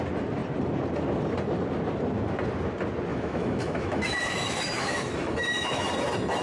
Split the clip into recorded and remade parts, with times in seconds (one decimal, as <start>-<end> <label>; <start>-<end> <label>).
0.0-3.1 recorded; 3.1-5.9 remade; 5.9-6.4 recorded